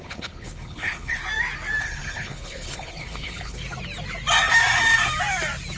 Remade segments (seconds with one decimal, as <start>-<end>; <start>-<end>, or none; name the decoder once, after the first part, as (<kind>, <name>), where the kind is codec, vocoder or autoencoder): 0.0-1.2 (codec, HILCodec); 1.8-3.6